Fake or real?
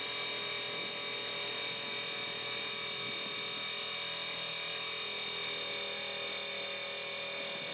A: real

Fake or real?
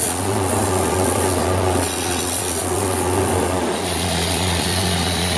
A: fake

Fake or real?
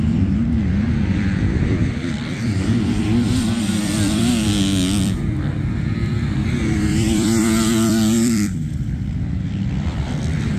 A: fake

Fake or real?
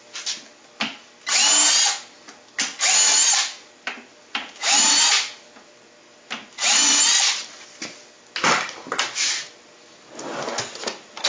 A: real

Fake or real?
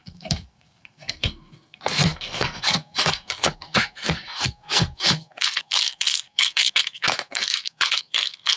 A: fake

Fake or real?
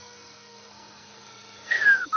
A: fake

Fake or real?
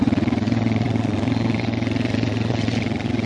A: fake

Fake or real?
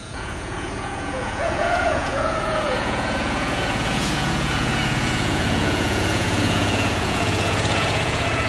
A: fake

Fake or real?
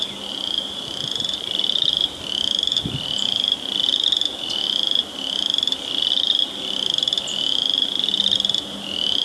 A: real